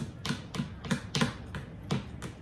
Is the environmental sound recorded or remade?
recorded